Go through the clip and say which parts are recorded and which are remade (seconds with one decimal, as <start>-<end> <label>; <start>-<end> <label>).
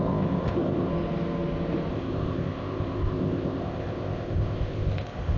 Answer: 0.0-0.9 remade; 0.9-1.9 recorded; 1.9-5.4 remade